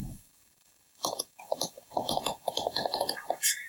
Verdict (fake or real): fake